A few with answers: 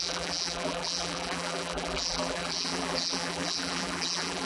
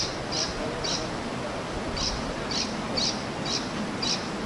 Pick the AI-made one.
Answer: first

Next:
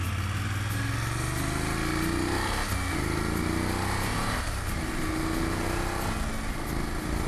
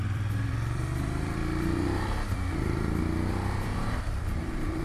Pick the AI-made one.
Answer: second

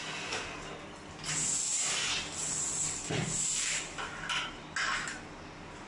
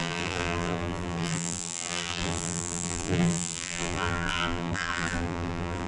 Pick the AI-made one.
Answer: second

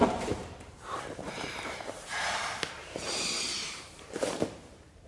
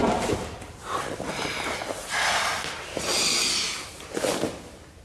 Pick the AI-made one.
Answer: first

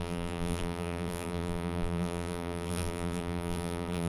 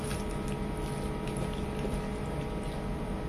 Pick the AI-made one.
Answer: first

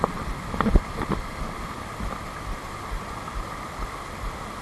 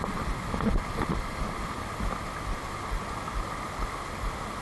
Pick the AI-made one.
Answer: first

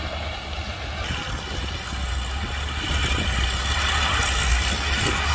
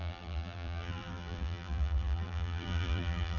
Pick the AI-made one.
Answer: second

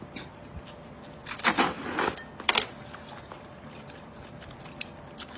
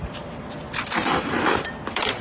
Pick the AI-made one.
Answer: second